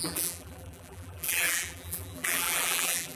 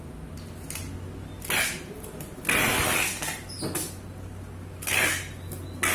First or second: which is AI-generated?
first